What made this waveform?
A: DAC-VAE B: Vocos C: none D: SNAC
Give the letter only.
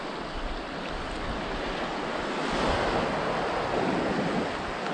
C